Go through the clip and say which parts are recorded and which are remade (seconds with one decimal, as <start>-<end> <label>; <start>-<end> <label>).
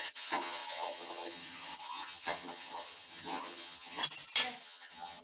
0.0-4.0 remade; 4.0-4.6 recorded; 4.6-5.2 remade